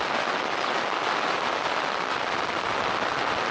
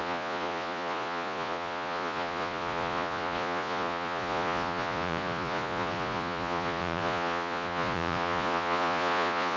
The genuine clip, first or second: first